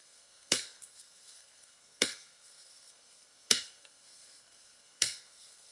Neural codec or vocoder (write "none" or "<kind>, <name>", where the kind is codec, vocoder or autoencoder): codec, SNAC